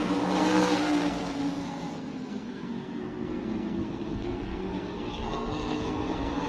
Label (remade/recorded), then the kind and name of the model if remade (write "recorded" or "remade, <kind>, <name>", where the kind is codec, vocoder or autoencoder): remade, codec, SNAC